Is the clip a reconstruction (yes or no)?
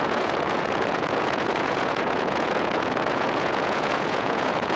yes